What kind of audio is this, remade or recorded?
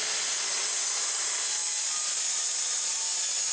recorded